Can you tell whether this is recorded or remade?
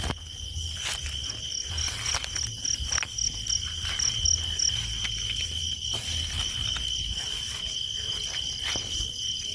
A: recorded